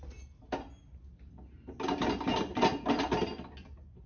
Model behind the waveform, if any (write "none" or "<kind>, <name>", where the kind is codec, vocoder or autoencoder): none